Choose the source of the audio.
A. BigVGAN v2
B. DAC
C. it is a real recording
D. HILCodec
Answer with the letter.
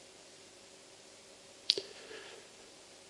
C